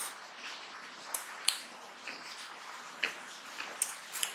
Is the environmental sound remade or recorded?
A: recorded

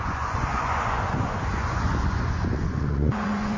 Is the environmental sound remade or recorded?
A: remade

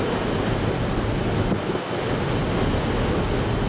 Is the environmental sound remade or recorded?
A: recorded